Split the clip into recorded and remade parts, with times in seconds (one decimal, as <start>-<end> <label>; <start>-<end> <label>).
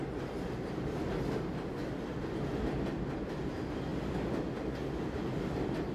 0.0-5.9 recorded